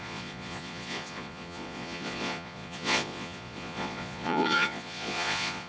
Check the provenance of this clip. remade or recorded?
remade